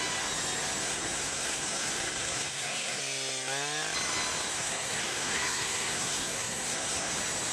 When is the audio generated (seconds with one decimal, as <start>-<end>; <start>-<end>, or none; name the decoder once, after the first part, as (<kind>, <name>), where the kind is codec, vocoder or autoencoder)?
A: 0.8-3.0 (codec, SNAC); 4.5-7.1

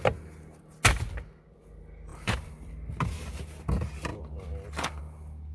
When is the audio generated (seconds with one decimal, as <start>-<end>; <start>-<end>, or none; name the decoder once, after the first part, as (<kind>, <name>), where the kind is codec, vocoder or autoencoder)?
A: 2.1-2.7 (vocoder, BigVGAN v2)

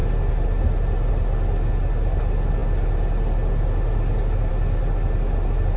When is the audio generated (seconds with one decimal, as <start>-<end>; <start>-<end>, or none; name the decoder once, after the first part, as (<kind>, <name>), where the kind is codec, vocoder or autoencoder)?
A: none

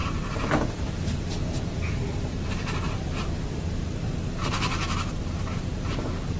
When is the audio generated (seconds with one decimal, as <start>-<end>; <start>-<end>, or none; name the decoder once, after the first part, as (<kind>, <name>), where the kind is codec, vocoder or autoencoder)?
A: 0.0-6.4 (vocoder, BigVGAN v2)

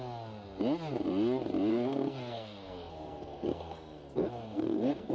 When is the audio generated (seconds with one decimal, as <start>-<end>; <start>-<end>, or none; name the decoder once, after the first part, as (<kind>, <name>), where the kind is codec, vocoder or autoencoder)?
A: 1.7-5.1 (codec, SNAC)

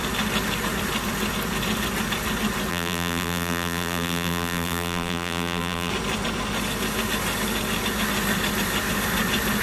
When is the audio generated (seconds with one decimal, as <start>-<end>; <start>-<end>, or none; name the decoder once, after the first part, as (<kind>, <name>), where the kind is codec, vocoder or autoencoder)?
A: 2.7-5.9 (vocoder, BigVGAN v2)

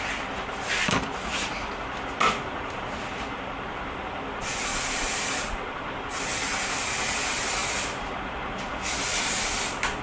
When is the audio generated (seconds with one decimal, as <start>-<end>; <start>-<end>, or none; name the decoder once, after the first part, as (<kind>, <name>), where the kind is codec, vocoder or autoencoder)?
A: 4.7-5.3 (vocoder, BigVGAN v2)